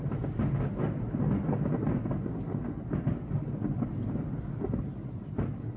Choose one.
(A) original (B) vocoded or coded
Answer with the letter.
A